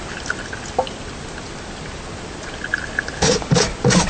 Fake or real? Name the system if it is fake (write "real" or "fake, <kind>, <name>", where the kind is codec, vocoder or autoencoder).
real